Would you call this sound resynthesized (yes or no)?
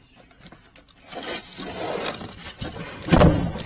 no